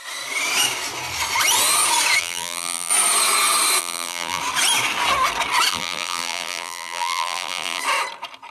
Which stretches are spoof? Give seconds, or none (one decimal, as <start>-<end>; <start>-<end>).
2.2-2.9; 3.8-4.4; 5.7-7.8